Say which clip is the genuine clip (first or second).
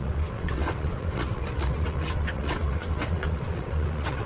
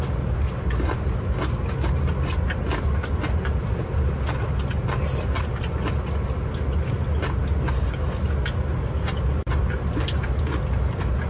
second